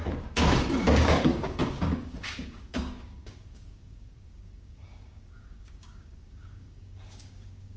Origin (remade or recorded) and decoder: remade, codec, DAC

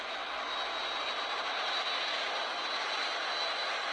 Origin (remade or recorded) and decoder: recorded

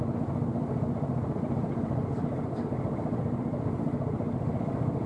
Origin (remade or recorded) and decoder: remade, vocoder, BigVGAN v2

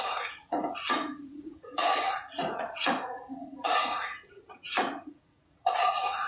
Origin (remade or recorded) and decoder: remade, vocoder, Vocos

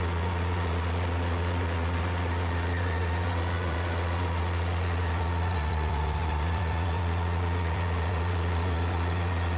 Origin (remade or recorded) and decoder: remade, vocoder, Vocos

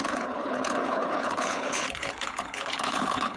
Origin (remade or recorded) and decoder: remade, codec, HILCodec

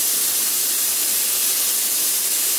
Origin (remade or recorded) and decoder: recorded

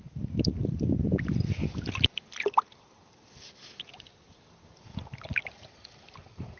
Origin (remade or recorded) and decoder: recorded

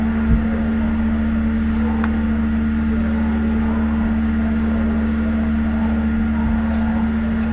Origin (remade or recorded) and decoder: recorded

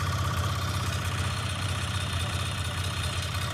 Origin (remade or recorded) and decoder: remade, vocoder, BigVGAN v2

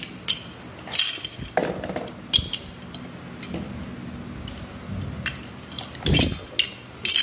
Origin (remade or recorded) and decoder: recorded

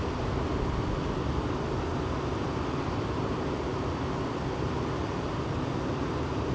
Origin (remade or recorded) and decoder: recorded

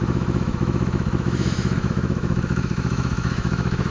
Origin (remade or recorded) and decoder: remade, autoencoder, DAC-VAE